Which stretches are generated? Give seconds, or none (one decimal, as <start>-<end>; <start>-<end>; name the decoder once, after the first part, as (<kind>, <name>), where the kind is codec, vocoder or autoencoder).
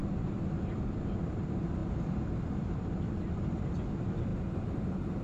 none